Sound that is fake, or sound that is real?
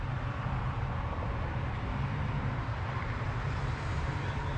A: real